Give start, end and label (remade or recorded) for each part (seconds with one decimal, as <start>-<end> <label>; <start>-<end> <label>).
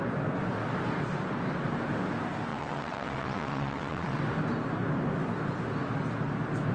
0.0-2.5 recorded; 2.5-4.2 remade; 4.2-6.7 recorded